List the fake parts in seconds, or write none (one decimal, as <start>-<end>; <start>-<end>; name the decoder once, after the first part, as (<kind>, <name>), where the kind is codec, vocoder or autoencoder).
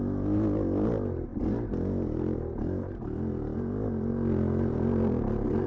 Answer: none